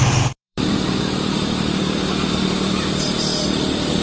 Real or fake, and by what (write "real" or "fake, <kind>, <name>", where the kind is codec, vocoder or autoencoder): fake, vocoder, BigVGAN v2